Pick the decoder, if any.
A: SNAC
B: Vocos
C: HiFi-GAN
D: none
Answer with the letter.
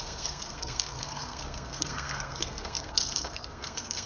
A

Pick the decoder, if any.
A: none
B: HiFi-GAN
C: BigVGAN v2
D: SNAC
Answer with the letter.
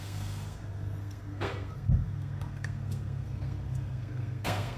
D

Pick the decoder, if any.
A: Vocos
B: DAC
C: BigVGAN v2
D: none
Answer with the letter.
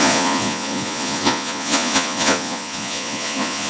A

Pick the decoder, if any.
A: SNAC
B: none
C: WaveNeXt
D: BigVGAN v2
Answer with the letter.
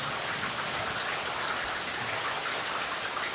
B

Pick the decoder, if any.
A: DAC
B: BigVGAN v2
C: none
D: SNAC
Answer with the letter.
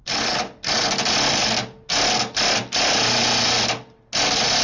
C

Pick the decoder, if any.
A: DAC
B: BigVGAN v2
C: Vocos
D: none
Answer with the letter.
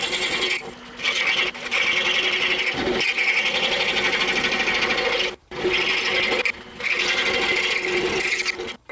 D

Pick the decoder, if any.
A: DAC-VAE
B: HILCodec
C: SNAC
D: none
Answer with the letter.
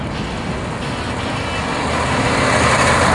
D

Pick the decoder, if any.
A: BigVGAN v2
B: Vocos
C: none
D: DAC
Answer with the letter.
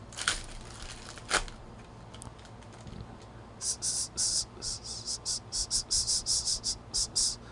C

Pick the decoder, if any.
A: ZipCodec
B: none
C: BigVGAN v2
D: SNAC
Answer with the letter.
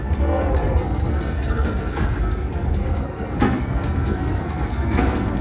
D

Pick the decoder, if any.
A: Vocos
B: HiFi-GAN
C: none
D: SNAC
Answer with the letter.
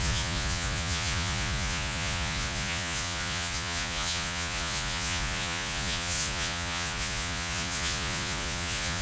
A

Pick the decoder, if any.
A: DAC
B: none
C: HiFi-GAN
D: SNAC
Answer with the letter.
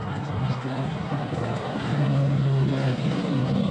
D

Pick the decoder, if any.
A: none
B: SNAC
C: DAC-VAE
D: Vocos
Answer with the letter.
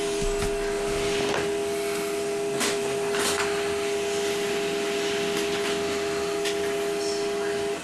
A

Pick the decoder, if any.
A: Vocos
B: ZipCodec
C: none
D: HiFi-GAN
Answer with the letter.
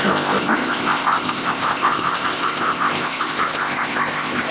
B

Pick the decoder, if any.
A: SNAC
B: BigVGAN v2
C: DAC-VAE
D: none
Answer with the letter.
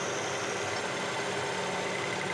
D